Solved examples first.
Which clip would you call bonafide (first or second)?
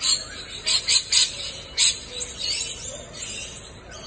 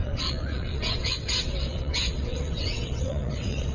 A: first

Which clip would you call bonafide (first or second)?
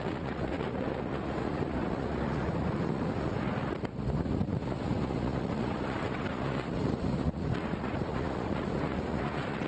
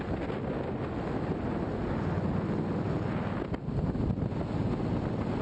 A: second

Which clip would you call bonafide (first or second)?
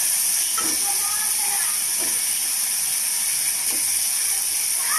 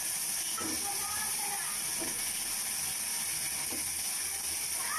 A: second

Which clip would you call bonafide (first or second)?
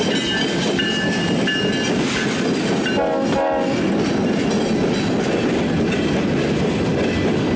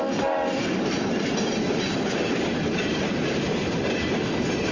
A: first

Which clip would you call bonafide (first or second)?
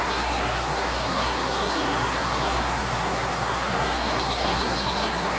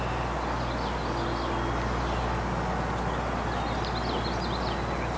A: second